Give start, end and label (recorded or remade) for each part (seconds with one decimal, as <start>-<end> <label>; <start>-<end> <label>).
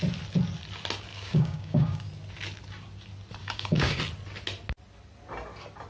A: 0.0-1.1 recorded; 1.1-2.1 remade; 2.1-3.4 recorded; 3.4-4.0 remade; 4.0-5.9 recorded